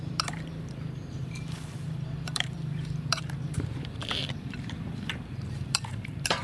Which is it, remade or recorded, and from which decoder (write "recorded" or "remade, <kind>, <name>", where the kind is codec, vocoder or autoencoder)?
remade, vocoder, BigVGAN v2